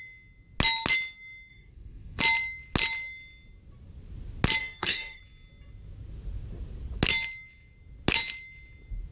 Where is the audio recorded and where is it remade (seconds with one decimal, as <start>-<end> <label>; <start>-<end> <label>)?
0.0-1.5 recorded; 1.5-2.2 remade; 2.2-4.6 recorded; 4.6-5.2 remade; 5.2-9.1 recorded